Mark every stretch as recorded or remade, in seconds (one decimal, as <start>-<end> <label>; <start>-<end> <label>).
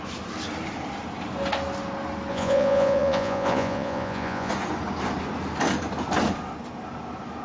0.0-2.3 recorded; 2.3-4.5 remade; 4.5-7.4 recorded